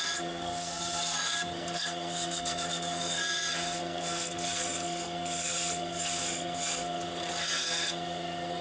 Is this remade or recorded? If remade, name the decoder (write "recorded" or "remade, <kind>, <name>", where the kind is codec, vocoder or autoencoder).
remade, codec, SNAC